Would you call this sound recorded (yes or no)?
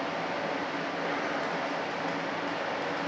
yes